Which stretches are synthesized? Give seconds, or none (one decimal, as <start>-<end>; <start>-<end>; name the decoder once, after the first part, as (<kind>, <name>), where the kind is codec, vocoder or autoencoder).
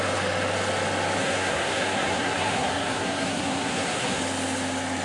1.2-4.2 (codec, SNAC)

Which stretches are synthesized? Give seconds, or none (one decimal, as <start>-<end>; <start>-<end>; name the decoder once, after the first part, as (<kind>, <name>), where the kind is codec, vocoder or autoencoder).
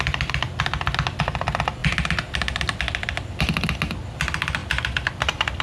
4.6-5.6 (vocoder, BigVGAN v2)